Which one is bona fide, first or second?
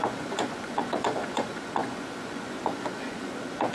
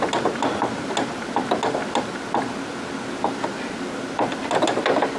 second